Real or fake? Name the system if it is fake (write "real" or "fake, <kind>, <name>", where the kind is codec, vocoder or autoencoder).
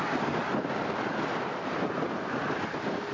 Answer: real